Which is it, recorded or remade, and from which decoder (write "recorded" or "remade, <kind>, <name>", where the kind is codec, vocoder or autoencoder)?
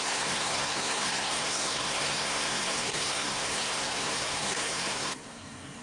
remade, codec, SNAC